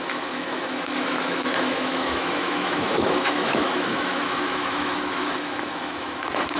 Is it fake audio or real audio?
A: fake